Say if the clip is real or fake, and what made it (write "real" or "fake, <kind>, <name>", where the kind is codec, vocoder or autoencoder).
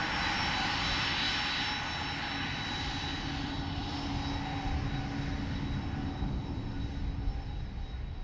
real